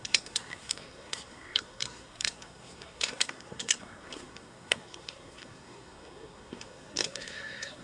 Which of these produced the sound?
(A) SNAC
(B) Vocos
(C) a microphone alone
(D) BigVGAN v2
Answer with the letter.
A